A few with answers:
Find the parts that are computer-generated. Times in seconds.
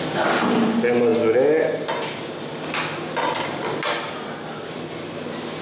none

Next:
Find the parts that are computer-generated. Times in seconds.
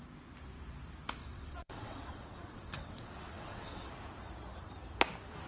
1.2-3.9